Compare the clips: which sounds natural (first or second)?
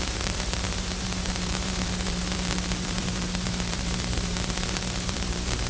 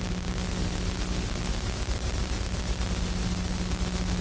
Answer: second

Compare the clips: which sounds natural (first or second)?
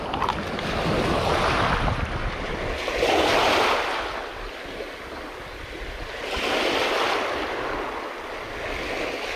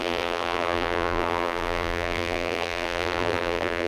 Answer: first